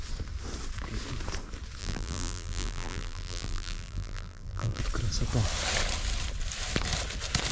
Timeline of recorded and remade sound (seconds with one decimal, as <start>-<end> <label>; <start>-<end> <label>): 0.0-1.8 recorded; 1.8-4.8 remade; 4.8-7.5 recorded